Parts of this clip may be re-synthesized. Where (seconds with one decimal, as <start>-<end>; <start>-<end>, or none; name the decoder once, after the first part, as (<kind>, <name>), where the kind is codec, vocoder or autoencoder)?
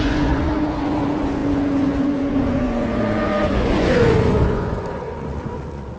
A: 0.0-6.0 (vocoder, Vocos)